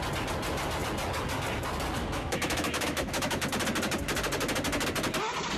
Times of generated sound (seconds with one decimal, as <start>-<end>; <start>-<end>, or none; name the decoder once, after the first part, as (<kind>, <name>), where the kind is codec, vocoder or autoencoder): 2.0-3.4 (autoencoder, DAC-VAE)